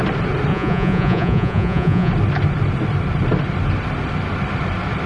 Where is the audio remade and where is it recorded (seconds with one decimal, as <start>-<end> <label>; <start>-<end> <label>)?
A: 0.0-0.5 recorded; 0.5-2.1 remade; 2.1-5.1 recorded